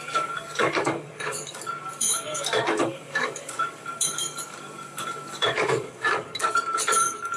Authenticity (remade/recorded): remade